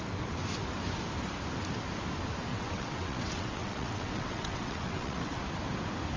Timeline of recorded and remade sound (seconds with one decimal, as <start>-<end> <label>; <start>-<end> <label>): 0.0-2.5 recorded; 2.5-5.4 remade; 5.4-6.2 recorded